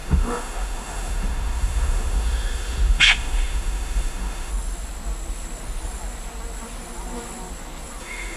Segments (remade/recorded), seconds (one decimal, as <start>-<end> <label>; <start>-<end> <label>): 0.0-4.5 remade; 4.5-8.0 recorded; 8.0-8.4 remade